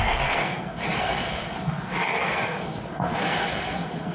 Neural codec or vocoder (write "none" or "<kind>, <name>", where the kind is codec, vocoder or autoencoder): codec, SNAC